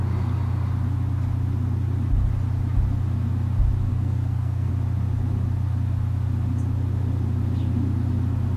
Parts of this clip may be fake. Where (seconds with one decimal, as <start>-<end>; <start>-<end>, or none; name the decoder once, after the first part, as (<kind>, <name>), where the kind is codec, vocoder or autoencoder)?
3.9-4.7 (codec, SNAC)

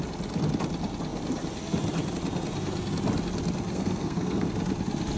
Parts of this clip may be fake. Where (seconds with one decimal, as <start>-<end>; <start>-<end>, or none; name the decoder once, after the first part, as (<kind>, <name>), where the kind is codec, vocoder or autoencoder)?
3.7-4.5 (codec, SNAC)

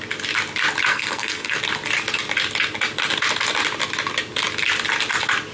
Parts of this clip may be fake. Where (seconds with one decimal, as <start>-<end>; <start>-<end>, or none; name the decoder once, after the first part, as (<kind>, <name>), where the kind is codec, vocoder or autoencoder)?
0.9-1.6 (codec, SNAC)

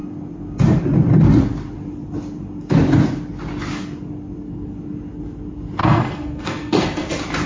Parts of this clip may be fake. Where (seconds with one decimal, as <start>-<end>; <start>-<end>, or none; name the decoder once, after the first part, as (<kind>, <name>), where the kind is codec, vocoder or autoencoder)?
5.8-7.1 (codec, SNAC)

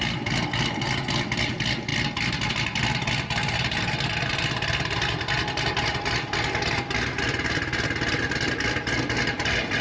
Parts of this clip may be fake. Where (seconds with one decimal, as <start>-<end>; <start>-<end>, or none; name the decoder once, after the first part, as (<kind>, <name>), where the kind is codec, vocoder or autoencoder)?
none

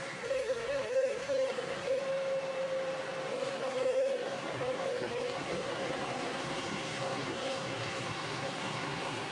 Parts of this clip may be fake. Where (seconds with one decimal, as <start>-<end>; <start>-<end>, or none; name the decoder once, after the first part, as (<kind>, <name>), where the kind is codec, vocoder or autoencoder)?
0.0-2.0 (codec, SNAC); 3.3-9.3

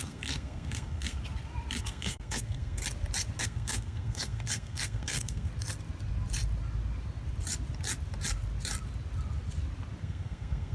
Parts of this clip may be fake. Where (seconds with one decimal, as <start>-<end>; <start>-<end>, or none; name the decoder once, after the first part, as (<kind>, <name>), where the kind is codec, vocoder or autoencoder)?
0.0-1.2 (codec, SNAC); 1.8-2.8; 3.4-5.5; 10.0-10.7